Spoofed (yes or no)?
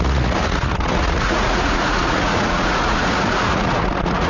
yes